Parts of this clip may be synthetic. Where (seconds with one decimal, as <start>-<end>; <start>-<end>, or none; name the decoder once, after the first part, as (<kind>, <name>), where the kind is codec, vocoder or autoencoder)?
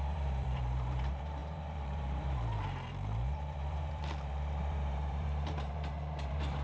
0.0-6.6 (vocoder, BigVGAN v2)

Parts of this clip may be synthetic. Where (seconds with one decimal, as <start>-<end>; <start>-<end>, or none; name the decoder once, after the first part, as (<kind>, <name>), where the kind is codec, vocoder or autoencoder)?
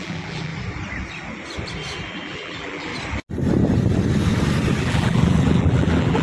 0.0-0.5 (vocoder, BigVGAN v2); 2.1-2.9; 4.8-6.2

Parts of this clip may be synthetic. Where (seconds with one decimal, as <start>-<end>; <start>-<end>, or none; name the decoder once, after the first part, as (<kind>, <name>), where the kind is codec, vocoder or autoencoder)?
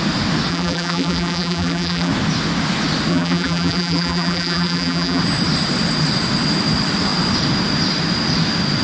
0.5-2.1 (vocoder, BigVGAN v2); 3.1-5.2